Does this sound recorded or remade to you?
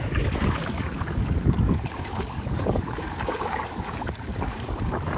remade